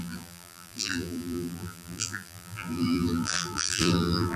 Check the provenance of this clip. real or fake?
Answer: fake